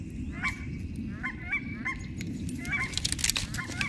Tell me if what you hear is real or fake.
real